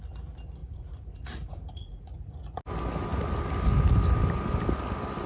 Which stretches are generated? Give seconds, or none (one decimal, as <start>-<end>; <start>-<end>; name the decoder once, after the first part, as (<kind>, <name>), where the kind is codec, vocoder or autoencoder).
0.6-2.6 (vocoder, Vocos)